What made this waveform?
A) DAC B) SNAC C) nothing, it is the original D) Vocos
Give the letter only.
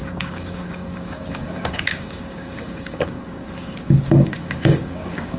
A